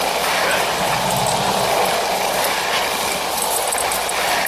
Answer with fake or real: real